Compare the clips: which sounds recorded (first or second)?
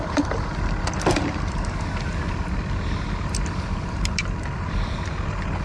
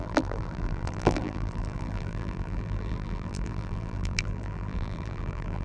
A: first